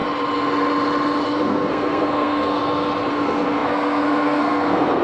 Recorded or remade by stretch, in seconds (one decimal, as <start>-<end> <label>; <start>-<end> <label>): 0.0-1.4 recorded; 1.4-2.6 remade; 2.6-3.1 recorded; 3.1-5.0 remade